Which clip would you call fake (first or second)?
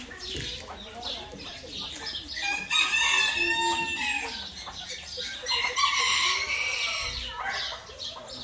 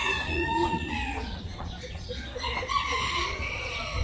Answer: second